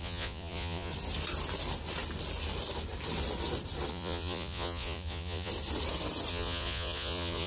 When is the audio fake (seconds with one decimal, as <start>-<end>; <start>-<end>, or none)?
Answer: 0.0-0.9; 3.9-5.5; 6.3-7.5